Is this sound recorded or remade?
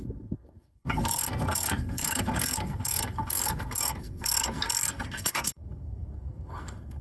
remade